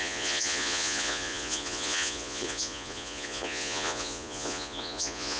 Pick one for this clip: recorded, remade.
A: remade